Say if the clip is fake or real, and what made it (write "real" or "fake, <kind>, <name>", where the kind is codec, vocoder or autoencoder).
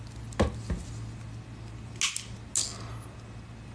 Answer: real